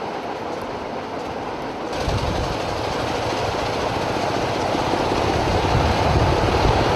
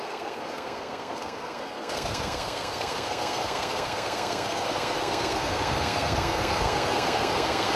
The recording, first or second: first